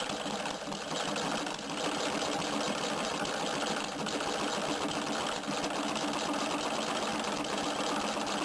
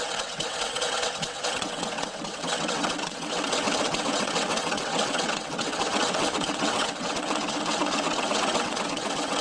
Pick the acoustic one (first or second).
first